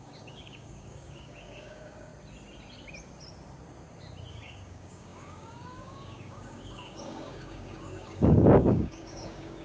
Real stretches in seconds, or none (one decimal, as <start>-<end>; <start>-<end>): 2.1-4.3